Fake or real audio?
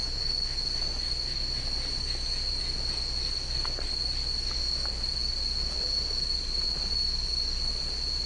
real